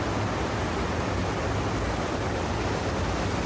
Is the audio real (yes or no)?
yes